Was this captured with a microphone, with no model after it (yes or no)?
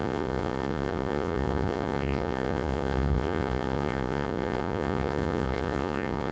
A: no